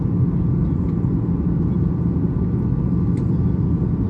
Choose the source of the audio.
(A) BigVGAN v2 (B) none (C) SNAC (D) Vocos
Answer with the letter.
B